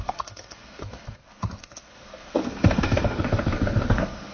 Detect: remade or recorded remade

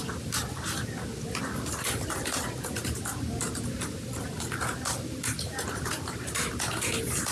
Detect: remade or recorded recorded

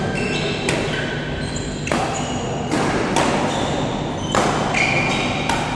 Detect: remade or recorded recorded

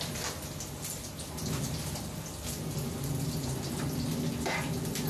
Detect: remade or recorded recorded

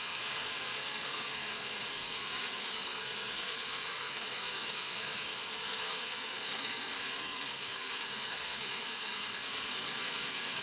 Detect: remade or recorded remade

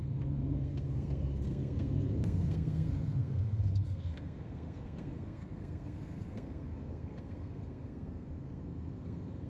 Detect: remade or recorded remade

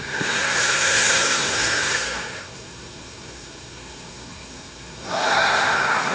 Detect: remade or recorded remade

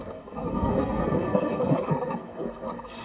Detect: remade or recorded remade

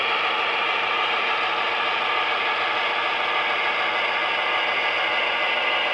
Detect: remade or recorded recorded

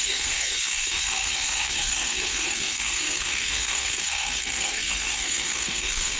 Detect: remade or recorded remade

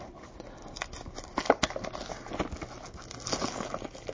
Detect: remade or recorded recorded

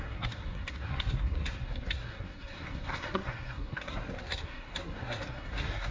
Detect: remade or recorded remade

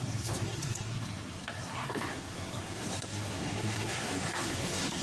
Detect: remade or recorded remade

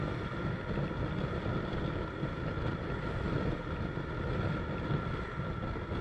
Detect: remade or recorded recorded